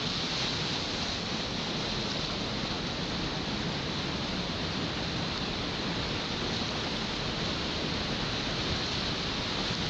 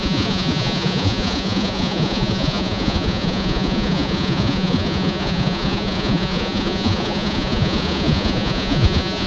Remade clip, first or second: second